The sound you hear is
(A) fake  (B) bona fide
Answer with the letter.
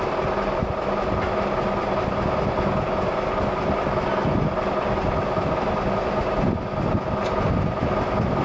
B